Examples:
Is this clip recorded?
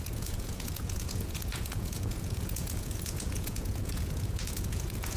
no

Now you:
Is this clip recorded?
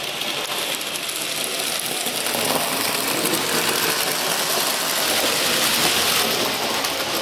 yes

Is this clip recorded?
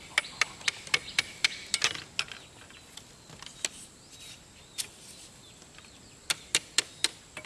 yes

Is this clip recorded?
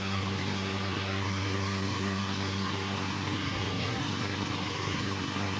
no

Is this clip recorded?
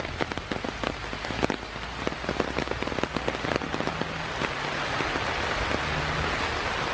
yes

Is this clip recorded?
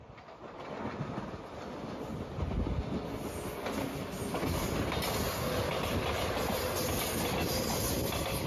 yes